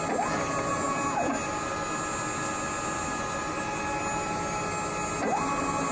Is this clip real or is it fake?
real